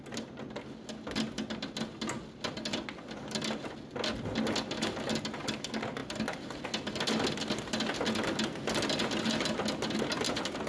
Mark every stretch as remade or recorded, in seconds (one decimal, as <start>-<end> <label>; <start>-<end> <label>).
0.0-10.7 recorded